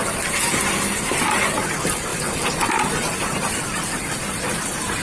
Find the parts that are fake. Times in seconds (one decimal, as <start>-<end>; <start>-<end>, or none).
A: none